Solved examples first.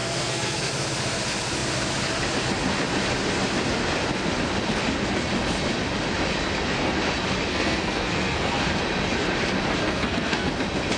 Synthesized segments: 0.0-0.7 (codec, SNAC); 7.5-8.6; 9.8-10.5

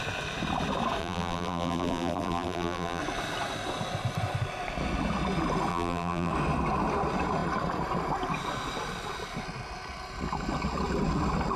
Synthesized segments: 1.0-3.0 (vocoder, BigVGAN v2); 5.7-6.3

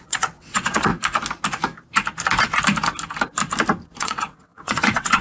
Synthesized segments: 0.0-0.9 (vocoder, WaveNeXt); 4.0-5.2

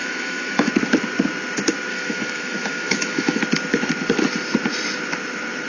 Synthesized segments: 0.0-0.7 (autoencoder, DAC-VAE); 1.9-3.4